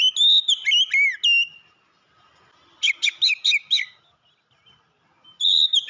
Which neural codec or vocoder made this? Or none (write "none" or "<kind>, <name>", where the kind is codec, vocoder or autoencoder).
none